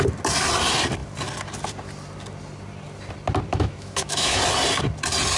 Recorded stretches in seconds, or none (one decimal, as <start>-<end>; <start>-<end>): 0.0-3.5; 4.4-5.4